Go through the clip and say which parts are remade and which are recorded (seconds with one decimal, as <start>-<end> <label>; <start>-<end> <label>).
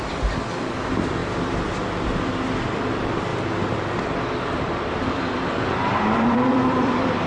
0.0-3.3 remade; 3.3-4.6 recorded; 4.6-7.3 remade